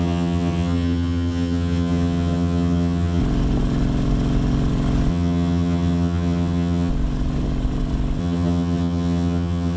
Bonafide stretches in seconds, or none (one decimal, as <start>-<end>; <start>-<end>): 3.2-5.1; 6.9-8.2